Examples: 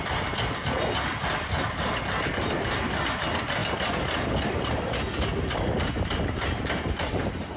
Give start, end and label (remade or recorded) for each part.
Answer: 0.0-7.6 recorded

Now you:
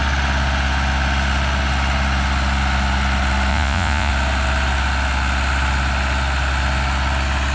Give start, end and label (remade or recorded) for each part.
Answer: 0.0-3.5 recorded; 3.5-4.1 remade; 4.1-7.5 recorded

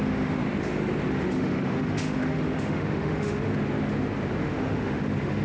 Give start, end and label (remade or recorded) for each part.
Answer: 0.0-0.4 remade; 0.4-1.1 recorded; 1.1-3.5 remade; 3.5-4.4 recorded; 4.4-5.4 remade

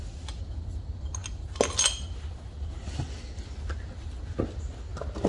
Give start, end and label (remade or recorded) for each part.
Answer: 0.0-5.3 recorded

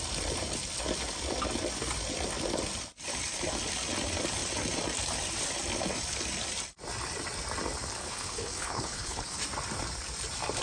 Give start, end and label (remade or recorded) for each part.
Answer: 0.0-8.0 recorded; 8.0-9.4 remade; 9.4-10.6 recorded

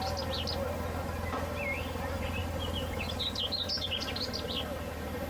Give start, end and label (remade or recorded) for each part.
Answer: 0.0-5.3 recorded